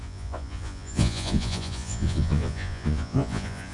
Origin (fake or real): fake